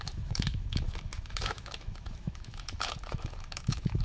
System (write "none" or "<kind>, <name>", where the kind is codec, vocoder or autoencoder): autoencoder, DAC-VAE